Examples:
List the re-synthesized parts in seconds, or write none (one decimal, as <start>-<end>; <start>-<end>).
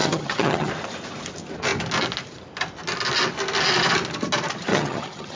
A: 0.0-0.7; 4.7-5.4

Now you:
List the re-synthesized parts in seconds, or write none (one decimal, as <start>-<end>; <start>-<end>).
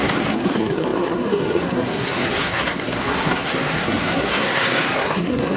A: 0.0-5.6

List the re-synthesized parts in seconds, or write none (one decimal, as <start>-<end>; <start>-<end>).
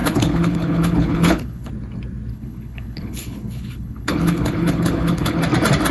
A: 0.0-1.7; 2.3-5.4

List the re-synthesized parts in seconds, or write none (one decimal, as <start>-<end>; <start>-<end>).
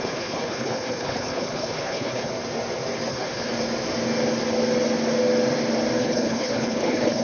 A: 0.0-2.3; 3.1-3.5; 6.0-7.2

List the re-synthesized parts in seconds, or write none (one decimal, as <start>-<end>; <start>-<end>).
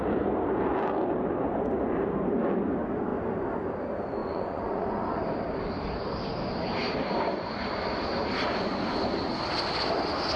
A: 4.2-5.1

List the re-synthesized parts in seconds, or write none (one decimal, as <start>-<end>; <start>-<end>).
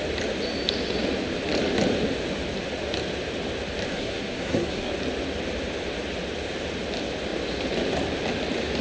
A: 3.9-4.9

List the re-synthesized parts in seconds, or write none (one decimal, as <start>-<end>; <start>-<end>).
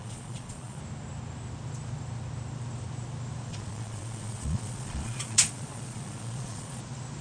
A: 0.0-0.8; 3.5-6.8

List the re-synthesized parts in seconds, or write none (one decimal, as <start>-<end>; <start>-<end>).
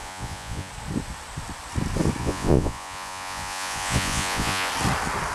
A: 0.0-0.7; 2.2-4.7